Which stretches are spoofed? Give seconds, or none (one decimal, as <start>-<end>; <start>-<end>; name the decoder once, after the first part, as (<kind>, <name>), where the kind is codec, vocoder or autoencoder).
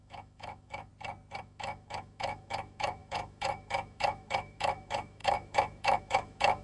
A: 0.0-0.9 (autoencoder, DAC-VAE); 1.4-6.6